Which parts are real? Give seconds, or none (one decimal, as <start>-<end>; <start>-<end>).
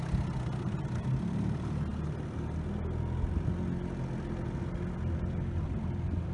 0.0-6.3